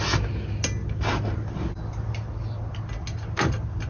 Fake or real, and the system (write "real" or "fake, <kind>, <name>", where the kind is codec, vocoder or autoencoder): real